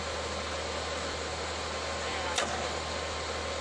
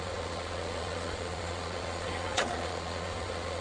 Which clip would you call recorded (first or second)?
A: first